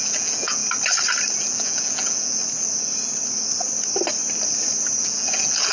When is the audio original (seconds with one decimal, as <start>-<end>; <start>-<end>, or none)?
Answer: 0.6-1.4; 2.4-5.0